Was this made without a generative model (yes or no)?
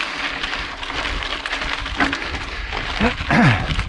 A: yes